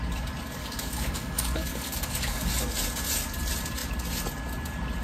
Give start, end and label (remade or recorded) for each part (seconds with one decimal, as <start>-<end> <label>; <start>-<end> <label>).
0.0-0.6 recorded; 0.6-2.5 remade; 2.5-5.0 recorded